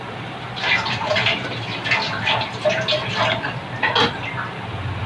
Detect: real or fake real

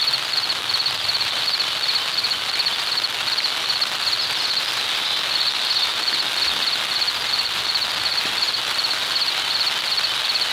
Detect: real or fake real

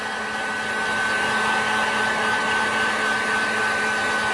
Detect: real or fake real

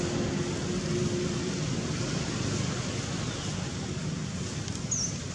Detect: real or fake real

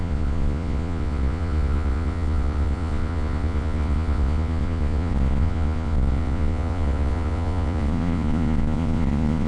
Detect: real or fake fake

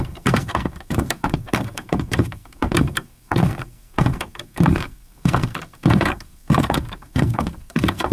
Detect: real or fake fake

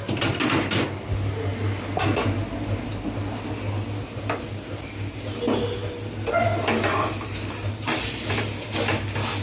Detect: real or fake real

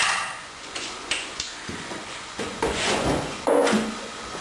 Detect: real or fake fake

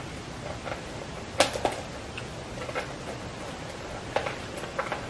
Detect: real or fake real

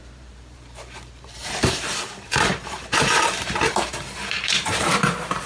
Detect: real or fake fake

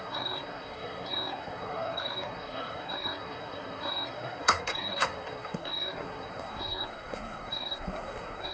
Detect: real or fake fake